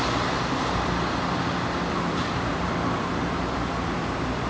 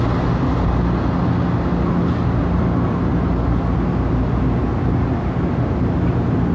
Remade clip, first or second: first